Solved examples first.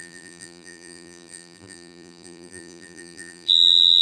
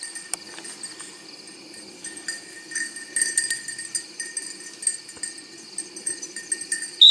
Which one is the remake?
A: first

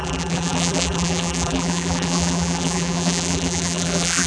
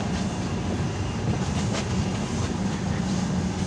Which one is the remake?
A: first